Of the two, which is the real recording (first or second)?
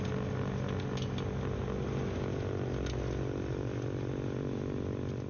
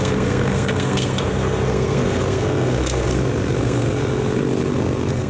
first